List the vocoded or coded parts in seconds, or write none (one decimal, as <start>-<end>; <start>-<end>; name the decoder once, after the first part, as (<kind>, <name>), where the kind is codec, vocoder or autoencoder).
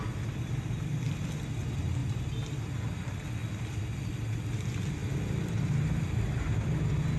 none